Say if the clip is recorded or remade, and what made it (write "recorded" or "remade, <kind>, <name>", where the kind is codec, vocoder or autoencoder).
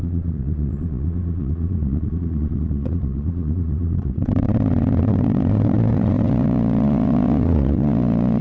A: remade, vocoder, Vocos